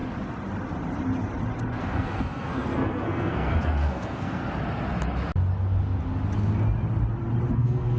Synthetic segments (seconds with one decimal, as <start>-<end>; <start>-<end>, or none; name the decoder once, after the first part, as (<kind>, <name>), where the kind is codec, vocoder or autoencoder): 1.8-4.4 (codec, SNAC); 7.5-8.0

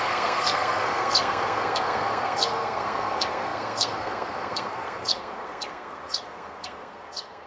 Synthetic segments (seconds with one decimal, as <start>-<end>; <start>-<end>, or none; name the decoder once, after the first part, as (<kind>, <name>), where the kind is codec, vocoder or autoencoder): 0.0-7.5 (codec, SNAC)

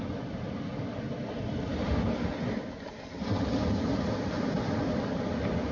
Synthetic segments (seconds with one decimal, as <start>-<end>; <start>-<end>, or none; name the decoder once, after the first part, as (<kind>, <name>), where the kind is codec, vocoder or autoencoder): none

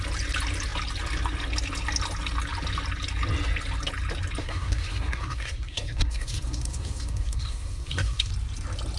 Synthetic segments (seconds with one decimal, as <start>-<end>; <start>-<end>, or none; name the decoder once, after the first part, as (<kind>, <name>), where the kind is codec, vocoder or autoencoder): 4.4-8.3 (codec, SNAC)